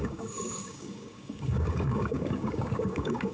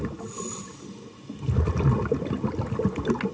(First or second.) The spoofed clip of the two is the first